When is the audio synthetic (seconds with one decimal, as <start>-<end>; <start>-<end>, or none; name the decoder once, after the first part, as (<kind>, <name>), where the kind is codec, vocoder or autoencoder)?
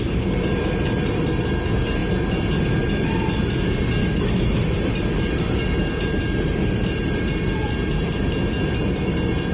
4.0-4.6 (autoencoder, DAC-VAE)